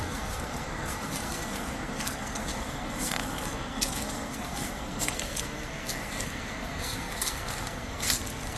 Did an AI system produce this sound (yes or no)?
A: yes